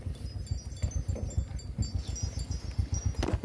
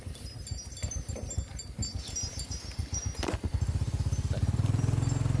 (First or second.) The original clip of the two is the first